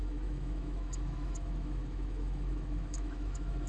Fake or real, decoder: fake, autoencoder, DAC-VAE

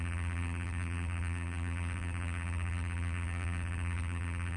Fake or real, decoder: fake, vocoder, BigVGAN v2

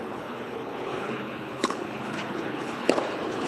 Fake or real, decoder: fake, codec, HILCodec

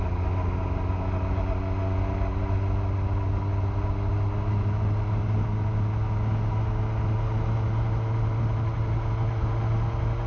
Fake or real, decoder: real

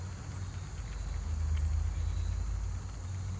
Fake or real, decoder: real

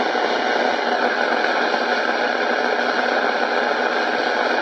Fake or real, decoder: real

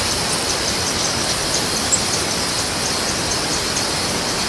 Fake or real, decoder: real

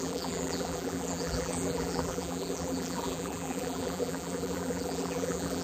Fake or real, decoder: fake, vocoder, BigVGAN v2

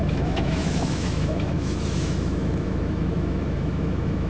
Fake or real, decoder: fake, autoencoder, DAC-VAE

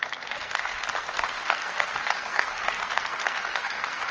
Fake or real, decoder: fake, codec, SNAC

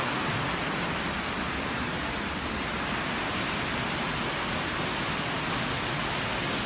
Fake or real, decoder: real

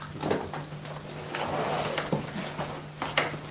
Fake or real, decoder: real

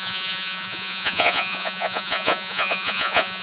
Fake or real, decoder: fake, vocoder, Vocos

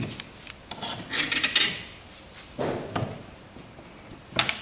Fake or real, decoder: real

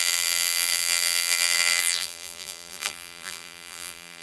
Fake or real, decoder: fake, vocoder, BigVGAN v2